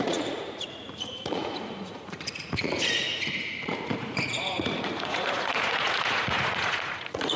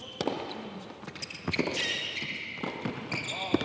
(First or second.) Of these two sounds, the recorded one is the second